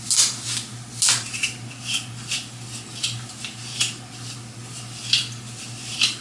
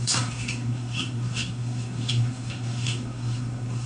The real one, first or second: first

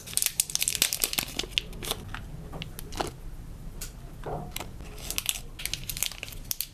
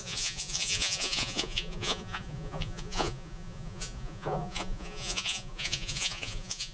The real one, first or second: first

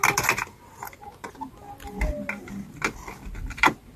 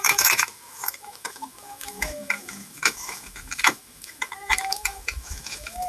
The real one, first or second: first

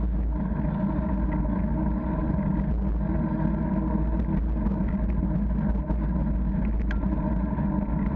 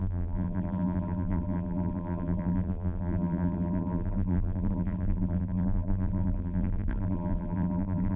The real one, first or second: first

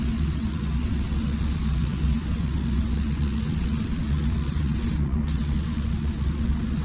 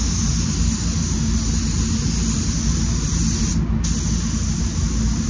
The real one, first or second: second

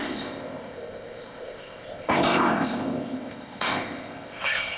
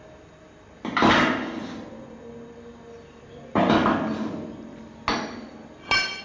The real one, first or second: second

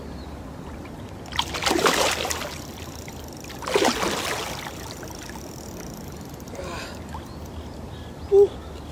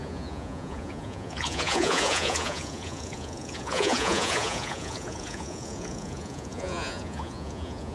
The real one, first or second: first